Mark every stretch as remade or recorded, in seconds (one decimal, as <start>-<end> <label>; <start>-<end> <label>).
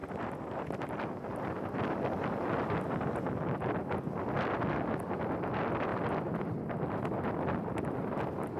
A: 0.0-4.7 remade; 4.7-5.9 recorded; 5.9-6.5 remade; 6.5-8.6 recorded